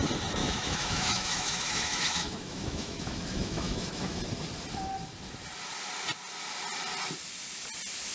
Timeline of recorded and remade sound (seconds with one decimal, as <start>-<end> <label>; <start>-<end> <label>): 0.0-0.4 recorded; 0.4-4.2 remade; 4.2-8.1 recorded